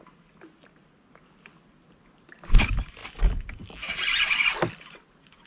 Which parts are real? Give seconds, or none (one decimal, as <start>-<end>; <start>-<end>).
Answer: 0.0-5.5